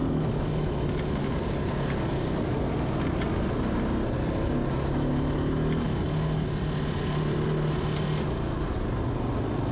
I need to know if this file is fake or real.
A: real